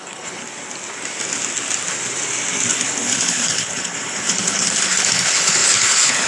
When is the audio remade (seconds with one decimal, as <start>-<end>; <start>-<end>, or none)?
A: 0.0-0.4; 2.7-6.3